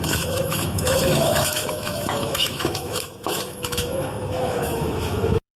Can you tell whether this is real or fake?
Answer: fake